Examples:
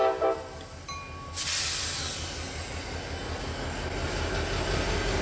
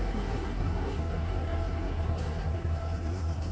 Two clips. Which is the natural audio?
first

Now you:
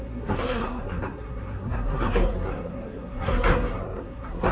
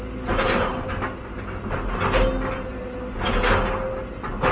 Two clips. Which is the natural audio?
second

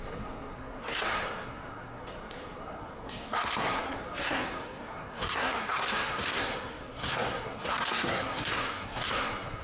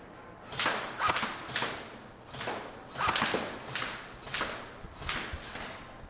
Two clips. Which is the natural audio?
second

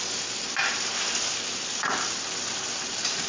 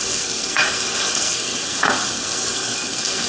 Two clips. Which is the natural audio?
first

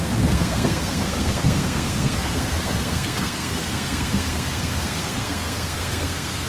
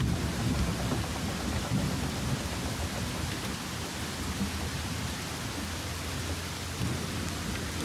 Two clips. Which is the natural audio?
second